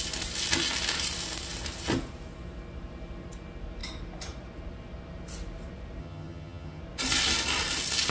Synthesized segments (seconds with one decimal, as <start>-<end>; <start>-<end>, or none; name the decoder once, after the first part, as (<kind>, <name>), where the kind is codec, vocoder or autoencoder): 6.0-6.8 (vocoder, HiFi-GAN)